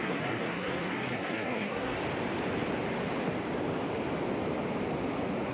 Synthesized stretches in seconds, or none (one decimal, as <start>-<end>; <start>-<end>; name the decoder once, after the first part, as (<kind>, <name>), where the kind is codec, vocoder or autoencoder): 0.0-2.0 (codec, SNAC)